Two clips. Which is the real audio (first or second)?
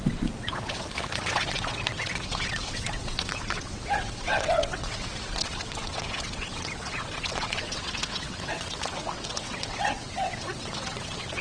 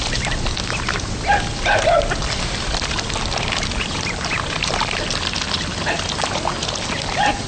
second